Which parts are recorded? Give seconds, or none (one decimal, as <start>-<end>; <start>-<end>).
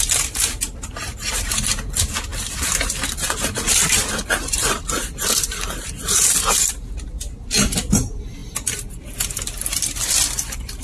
0.0-2.3; 6.7-8.4